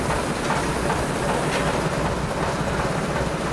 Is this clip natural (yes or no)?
yes